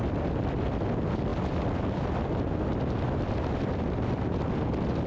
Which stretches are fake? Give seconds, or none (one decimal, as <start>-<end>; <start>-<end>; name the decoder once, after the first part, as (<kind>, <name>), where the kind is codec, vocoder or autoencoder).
none